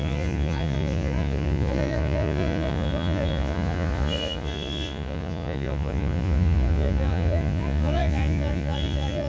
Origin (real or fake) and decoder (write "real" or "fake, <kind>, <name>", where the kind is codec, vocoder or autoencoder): fake, vocoder, Vocos